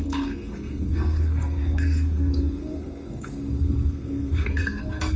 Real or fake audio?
fake